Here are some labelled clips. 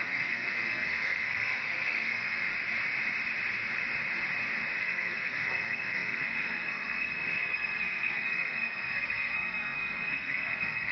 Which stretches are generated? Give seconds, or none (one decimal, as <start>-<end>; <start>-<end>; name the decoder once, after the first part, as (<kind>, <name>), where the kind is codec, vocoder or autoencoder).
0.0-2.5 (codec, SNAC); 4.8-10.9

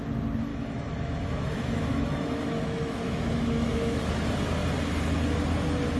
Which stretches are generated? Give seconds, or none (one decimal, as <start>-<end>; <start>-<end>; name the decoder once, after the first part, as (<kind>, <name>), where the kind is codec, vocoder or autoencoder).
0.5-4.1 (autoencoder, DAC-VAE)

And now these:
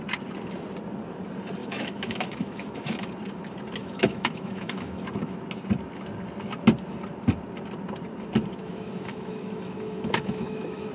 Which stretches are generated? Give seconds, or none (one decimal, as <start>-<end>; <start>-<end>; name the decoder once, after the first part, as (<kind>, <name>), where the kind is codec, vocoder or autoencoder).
1.6-3.1 (autoencoder, DAC-VAE); 3.8-5.0; 8.6-10.9

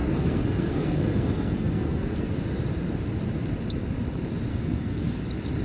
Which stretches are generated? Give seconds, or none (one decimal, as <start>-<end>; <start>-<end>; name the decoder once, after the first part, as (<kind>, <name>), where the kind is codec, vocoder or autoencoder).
0.0-2.3 (codec, SNAC); 4.5-5.0

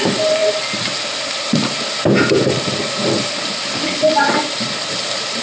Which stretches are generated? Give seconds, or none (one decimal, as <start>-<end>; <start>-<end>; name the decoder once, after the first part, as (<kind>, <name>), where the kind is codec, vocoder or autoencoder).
0.0-0.4 (vocoder, BigVGAN v2); 1.4-3.0; 4.1-5.4

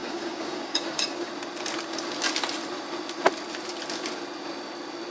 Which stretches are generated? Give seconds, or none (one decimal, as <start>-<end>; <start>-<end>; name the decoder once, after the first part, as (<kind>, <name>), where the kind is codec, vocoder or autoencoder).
0.0-1.3 (codec, DAC)